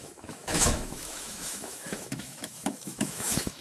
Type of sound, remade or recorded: remade